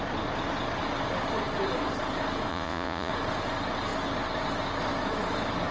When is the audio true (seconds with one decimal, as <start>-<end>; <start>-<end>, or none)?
0.0-2.5; 3.1-5.7